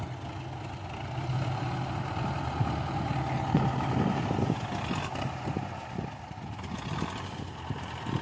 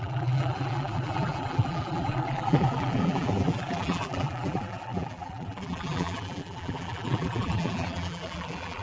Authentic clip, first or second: first